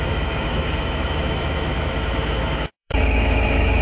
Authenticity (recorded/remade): remade